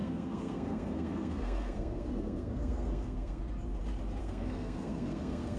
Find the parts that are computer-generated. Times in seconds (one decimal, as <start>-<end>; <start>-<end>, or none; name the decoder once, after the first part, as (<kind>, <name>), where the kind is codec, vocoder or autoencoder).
0.0-3.4 (codec, SNAC); 4.2-5.6